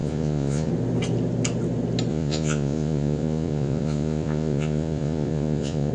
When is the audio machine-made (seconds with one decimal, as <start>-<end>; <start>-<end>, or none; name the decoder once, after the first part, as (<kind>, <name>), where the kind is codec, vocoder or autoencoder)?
0.0-0.7 (vocoder, Vocos); 2.1-5.9